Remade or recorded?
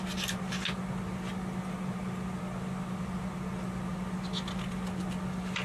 recorded